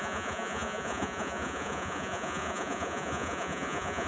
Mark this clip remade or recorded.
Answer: remade